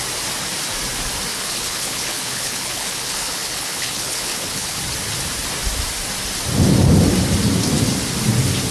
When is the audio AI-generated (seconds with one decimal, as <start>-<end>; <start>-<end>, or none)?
1.3-4.8